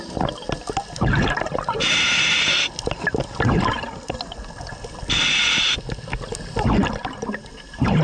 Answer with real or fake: real